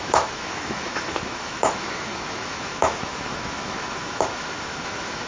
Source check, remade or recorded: remade